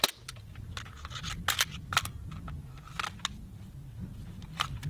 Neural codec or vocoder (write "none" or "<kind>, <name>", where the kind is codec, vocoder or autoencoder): none